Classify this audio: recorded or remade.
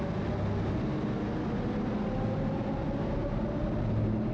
recorded